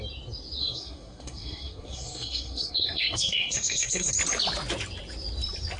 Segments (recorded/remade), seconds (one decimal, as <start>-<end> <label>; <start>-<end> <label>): 0.0-0.6 recorded; 0.6-4.1 remade; 4.1-5.8 recorded